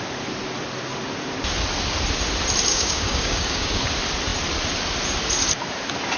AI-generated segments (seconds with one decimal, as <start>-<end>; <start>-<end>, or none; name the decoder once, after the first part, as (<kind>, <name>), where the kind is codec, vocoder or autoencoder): 2.7-3.8 (codec, DAC)